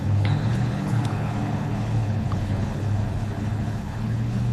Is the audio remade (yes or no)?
yes